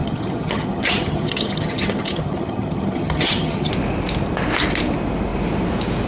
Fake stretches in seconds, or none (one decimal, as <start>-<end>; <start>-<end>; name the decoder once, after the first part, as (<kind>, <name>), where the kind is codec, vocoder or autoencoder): 0.0-3.7 (vocoder, HiFi-GAN)